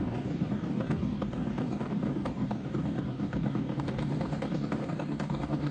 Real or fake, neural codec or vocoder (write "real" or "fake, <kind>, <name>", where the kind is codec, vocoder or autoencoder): fake, codec, DAC